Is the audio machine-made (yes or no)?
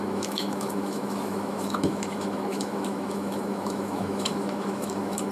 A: yes